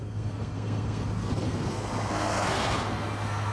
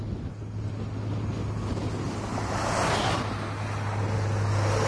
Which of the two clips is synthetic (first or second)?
first